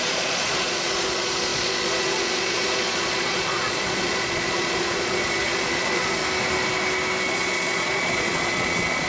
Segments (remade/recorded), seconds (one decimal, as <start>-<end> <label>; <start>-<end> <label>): 0.0-6.2 remade; 6.2-7.3 recorded; 7.3-9.1 remade